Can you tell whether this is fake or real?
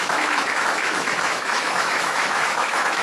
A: fake